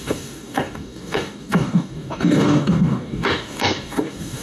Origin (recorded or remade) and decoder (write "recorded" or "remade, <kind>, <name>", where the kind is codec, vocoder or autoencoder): remade, codec, DAC